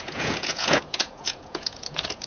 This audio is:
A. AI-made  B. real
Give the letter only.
A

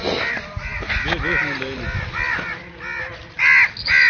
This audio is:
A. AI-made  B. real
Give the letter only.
B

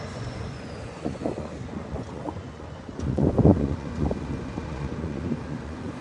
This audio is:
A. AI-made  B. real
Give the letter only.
A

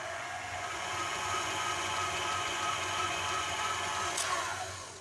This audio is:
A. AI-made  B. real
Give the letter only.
A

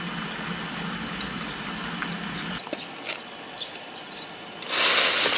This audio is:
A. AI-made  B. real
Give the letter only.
B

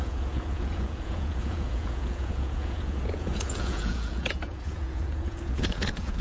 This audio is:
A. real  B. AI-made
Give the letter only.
B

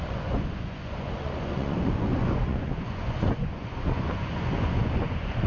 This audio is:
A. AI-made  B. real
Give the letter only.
A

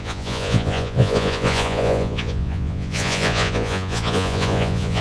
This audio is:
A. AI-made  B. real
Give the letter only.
A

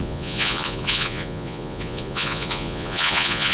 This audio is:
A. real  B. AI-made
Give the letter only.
B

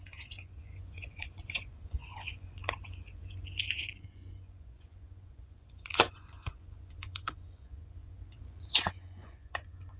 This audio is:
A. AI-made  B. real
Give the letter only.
A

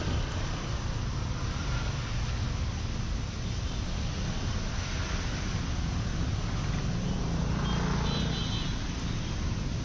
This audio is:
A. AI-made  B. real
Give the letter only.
B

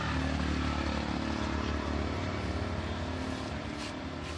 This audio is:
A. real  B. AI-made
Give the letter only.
A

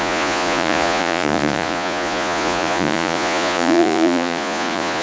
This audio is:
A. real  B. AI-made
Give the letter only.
B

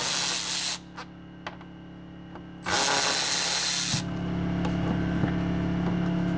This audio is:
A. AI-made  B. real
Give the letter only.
B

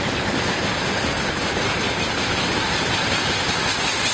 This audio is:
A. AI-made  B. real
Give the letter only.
B